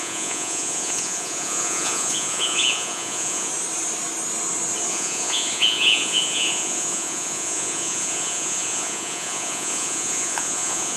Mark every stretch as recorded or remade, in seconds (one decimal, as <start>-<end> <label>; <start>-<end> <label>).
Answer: 0.0-3.5 remade; 3.5-4.9 recorded; 4.9-11.0 remade